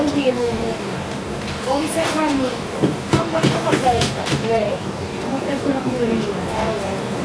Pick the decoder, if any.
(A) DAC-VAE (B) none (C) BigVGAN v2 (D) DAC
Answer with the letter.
D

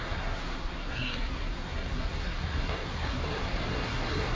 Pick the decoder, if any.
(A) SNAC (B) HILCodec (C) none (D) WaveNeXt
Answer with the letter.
A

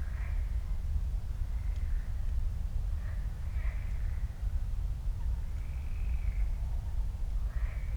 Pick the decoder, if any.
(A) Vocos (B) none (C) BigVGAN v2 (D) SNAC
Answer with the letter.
B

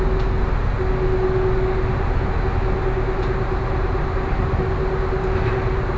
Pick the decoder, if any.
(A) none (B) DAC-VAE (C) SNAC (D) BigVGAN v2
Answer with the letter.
A